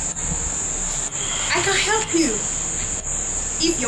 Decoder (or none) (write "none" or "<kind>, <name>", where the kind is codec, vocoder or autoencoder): none